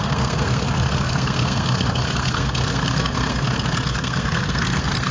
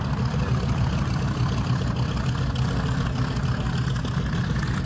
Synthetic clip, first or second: first